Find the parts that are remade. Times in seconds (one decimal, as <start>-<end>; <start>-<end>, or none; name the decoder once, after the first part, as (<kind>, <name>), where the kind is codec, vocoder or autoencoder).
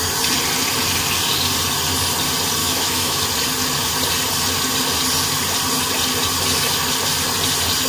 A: 2.6-3.2 (autoencoder, DAC-VAE)